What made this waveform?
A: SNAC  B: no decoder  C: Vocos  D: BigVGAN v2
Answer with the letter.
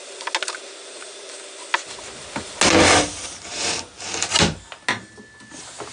B